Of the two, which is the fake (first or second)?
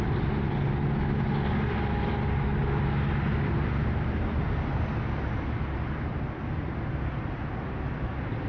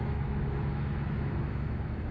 second